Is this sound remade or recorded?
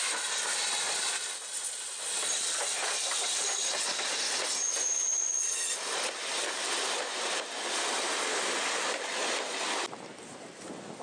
recorded